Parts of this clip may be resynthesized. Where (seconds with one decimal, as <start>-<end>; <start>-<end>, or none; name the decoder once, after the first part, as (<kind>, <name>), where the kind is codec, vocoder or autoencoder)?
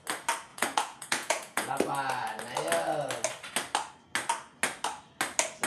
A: 0.5-1.7 (vocoder, Vocos)